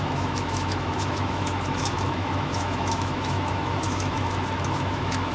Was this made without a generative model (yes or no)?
no